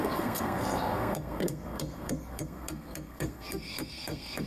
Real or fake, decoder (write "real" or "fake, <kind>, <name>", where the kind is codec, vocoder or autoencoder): fake, codec, SNAC